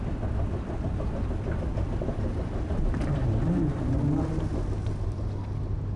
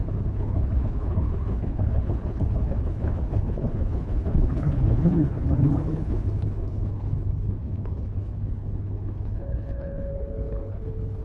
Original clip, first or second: first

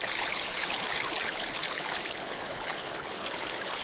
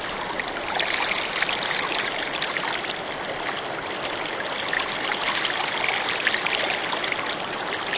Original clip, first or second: second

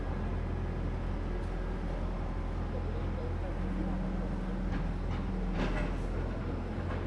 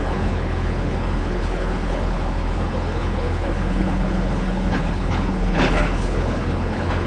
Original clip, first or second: first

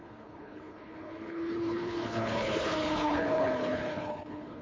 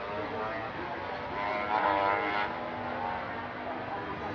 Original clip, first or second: second